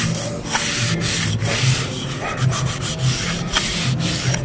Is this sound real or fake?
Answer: real